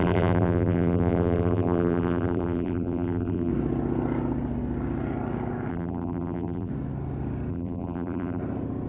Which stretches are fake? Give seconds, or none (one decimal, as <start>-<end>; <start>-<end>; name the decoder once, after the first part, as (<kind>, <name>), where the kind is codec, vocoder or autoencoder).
0.0-3.5 (vocoder, BigVGAN v2); 5.7-6.7; 7.5-8.4